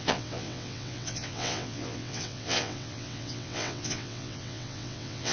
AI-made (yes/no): yes